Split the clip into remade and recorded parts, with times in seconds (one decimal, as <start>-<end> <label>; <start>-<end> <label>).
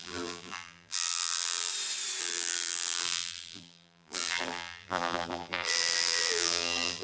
0.0-1.7 remade; 1.7-2.2 recorded; 2.2-7.0 remade